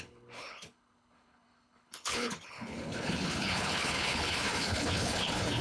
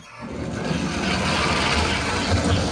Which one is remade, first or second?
first